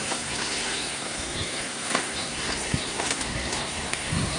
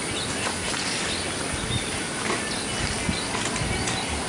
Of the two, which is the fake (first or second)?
first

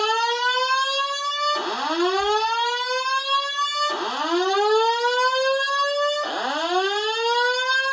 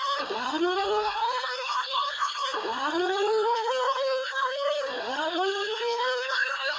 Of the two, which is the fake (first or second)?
second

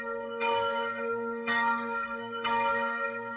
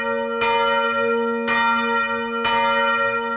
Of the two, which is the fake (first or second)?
first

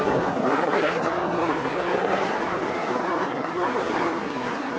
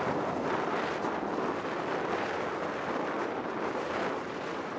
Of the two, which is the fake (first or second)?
first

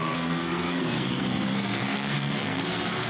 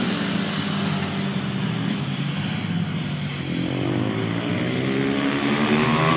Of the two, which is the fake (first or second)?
first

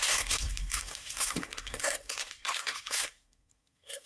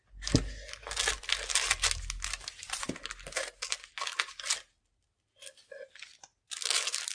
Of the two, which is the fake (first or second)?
first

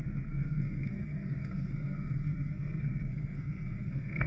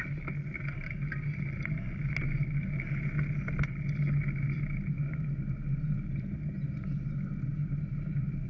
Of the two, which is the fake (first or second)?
first